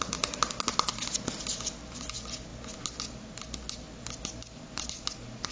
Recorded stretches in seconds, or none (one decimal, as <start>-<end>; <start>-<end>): 0.0-5.5